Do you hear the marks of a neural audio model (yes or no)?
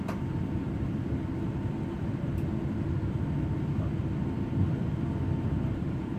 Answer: no